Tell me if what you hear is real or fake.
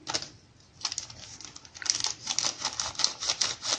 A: real